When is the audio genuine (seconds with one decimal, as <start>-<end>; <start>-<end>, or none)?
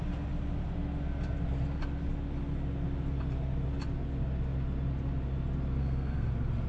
0.0-5.8; 6.3-6.7